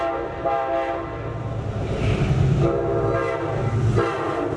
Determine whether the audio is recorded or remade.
recorded